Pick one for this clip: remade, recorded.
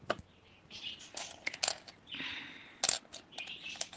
recorded